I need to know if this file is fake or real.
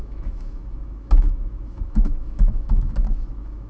fake